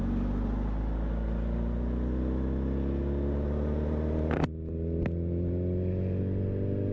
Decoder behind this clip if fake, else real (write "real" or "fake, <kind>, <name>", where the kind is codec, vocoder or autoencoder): real